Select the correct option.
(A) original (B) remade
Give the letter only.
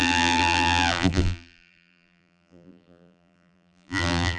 B